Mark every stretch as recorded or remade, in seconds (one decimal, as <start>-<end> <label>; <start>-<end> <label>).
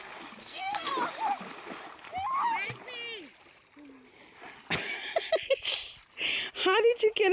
0.0-0.4 recorded; 0.4-0.9 remade; 0.9-7.3 recorded